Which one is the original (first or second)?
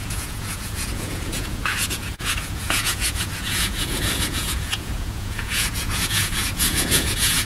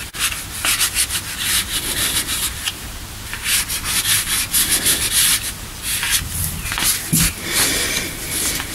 second